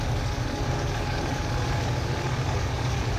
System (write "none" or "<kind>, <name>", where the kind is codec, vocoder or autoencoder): codec, DAC